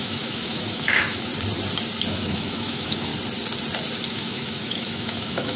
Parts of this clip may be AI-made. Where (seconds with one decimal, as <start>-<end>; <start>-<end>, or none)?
0.0-1.3; 2.1-3.1; 4.1-5.6